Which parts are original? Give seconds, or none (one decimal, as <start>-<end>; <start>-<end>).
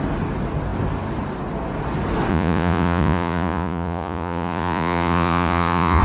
0.0-2.3